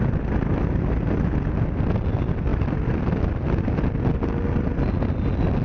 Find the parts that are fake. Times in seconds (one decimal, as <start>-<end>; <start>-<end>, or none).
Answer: none